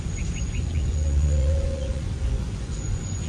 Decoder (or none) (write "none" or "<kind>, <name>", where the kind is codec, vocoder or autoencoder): vocoder, Vocos